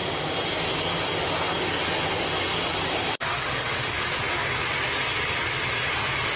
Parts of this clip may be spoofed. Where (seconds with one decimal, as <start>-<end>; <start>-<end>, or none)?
2.5-4.1